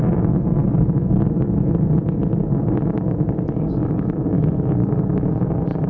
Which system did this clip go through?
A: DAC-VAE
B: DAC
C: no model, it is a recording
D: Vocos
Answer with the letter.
C